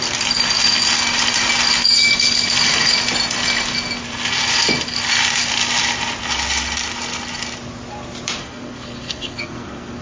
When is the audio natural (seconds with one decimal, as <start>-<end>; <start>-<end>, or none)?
0.0-8.4